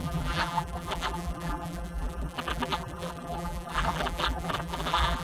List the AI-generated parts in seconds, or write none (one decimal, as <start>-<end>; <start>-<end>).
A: 0.0-5.2